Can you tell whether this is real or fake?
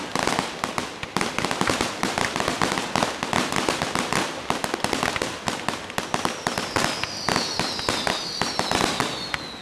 real